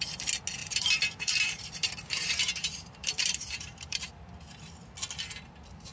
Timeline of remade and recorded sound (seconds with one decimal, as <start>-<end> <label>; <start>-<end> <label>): 0.0-0.6 recorded; 0.6-4.1 remade; 4.1-5.9 recorded